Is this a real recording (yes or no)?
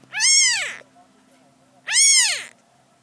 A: yes